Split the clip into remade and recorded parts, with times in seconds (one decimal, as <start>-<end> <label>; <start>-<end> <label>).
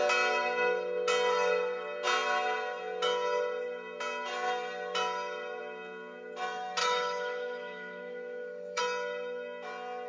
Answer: 0.0-6.8 recorded; 6.8-8.8 remade; 8.8-10.1 recorded